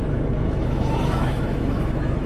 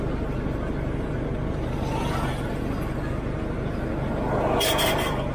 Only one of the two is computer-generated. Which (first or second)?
first